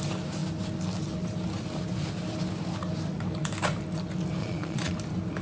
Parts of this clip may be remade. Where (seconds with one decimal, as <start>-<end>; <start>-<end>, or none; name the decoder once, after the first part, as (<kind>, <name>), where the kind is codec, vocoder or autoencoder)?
4.4-4.9 (vocoder, Vocos)